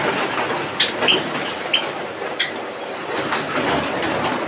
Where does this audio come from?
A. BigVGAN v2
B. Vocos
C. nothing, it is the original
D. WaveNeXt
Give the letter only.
C